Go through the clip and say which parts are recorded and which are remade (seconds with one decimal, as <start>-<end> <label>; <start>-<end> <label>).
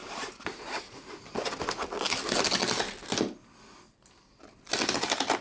0.0-5.4 recorded